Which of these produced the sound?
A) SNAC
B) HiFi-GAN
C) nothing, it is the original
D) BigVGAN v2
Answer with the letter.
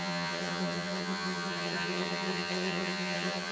B